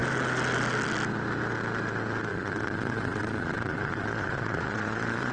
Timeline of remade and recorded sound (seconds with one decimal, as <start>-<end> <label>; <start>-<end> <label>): 0.0-2.3 recorded; 2.3-5.3 remade